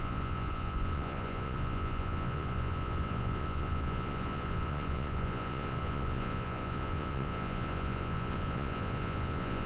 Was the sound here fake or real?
fake